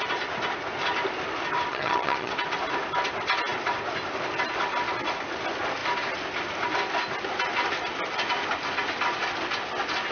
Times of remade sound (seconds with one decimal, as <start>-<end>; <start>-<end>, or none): 1.7-2.3